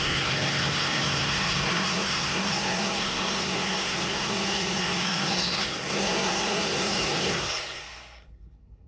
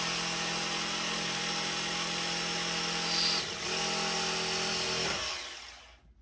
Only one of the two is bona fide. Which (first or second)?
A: second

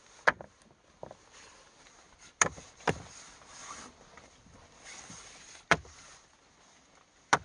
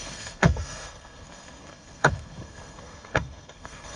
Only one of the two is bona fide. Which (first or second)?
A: first